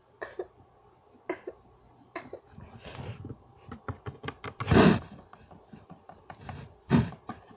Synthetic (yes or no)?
no